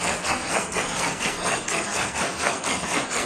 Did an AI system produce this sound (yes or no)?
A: yes